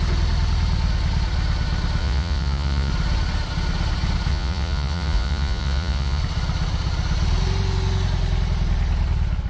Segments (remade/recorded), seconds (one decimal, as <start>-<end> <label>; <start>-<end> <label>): 0.0-2.0 recorded; 2.0-2.9 remade; 2.9-4.3 recorded; 4.3-6.2 remade; 6.2-9.5 recorded